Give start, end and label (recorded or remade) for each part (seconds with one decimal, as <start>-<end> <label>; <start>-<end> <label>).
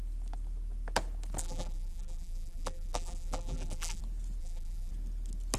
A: 0.0-1.4 recorded; 1.4-4.0 remade; 4.0-4.4 recorded; 4.4-4.9 remade; 4.9-5.6 recorded